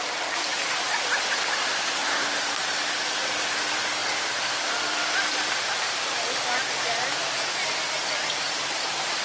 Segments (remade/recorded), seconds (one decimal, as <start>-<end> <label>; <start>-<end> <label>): 0.0-9.2 recorded